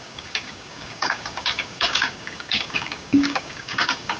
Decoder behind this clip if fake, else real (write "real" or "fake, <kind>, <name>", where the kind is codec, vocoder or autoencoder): fake, codec, DAC